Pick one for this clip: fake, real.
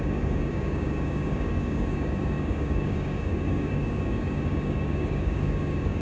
fake